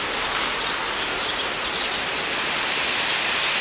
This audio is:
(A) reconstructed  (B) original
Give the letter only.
B